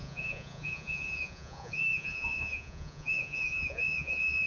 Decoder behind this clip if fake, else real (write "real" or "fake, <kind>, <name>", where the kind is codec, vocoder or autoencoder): fake, vocoder, Vocos